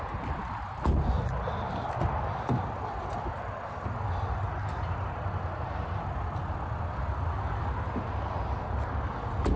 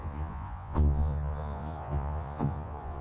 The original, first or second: first